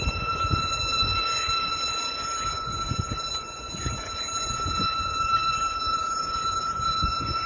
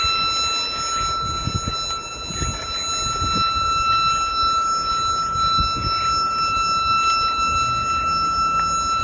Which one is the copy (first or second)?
first